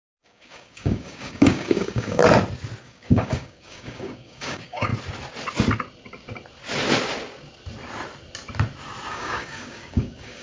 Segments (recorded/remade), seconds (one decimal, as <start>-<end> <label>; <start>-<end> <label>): 0.0-2.2 remade; 2.2-2.8 recorded; 2.8-4.9 remade; 4.9-9.1 recorded; 9.1-10.4 remade